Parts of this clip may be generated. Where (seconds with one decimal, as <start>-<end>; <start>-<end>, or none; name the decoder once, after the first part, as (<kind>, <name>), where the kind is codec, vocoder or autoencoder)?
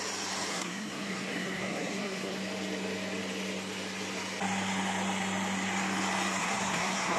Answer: 0.5-2.4 (codec, SNAC); 6.4-7.2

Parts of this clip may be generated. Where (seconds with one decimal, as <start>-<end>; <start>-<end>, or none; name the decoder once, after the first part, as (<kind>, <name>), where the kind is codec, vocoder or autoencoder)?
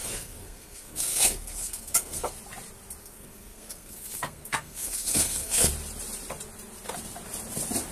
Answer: 0.0-2.3 (codec, SNAC); 3.0-5.7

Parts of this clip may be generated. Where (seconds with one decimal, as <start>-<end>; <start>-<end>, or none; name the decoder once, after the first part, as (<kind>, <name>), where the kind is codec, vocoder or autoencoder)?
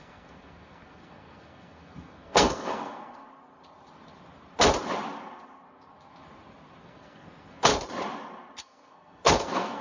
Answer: 0.0-3.2 (codec, SNAC); 6.8-7.7; 8.6-9.8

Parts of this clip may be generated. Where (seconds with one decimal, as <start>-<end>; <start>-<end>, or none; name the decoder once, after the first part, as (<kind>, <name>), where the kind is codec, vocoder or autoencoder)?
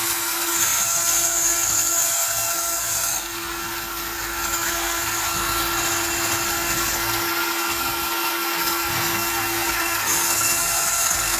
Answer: 0.0-5.6 (codec, SNAC); 6.5-11.4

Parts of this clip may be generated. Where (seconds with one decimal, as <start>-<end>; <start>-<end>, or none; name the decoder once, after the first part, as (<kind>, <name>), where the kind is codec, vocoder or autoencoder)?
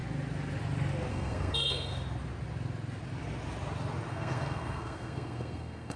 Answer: 1.1-1.9 (codec, SNAC); 4.1-6.0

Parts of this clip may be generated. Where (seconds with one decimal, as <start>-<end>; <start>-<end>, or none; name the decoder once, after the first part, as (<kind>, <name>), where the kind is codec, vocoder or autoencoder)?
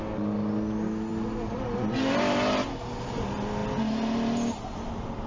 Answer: none